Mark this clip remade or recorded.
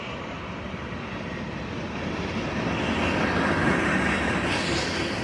recorded